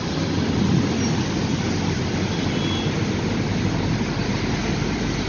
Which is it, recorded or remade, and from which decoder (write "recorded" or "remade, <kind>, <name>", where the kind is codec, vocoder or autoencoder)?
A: recorded